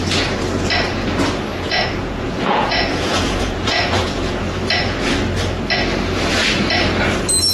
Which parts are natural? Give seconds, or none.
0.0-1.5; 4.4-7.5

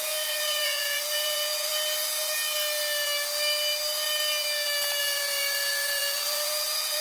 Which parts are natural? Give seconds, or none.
1.7-5.0

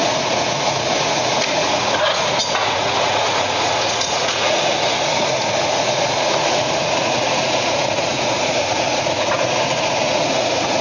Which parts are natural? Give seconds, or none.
none

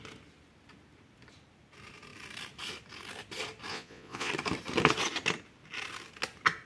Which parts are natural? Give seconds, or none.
0.0-3.7; 4.3-6.7

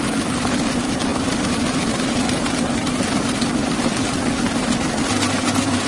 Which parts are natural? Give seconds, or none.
0.0-5.9

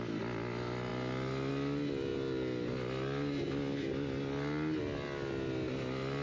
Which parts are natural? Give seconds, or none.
0.0-6.2

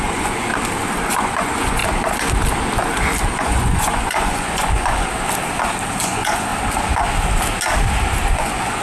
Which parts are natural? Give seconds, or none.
0.5-1.1; 1.8-3.3; 5.1-6.0; 6.5-8.3